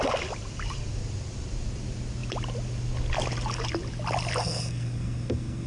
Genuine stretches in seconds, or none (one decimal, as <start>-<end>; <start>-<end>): 0.0-4.4